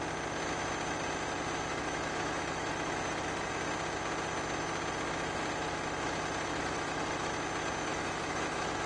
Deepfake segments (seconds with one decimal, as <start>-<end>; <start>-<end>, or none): 1.7-3.5; 6.5-7.3; 7.9-8.9